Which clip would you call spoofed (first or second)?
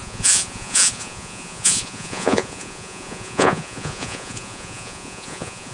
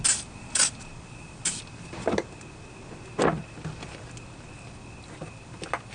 first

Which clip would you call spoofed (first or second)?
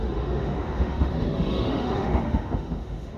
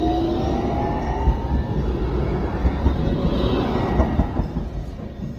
first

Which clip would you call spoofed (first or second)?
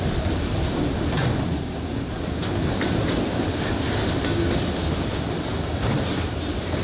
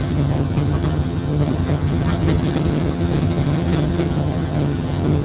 second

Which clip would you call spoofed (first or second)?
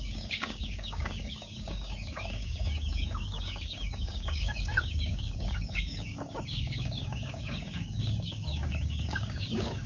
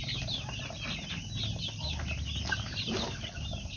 first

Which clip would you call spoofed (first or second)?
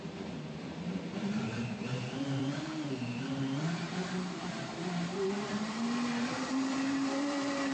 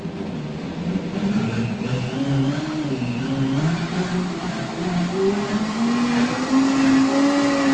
first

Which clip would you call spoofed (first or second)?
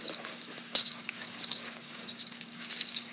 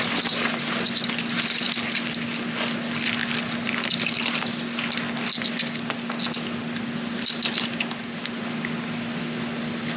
first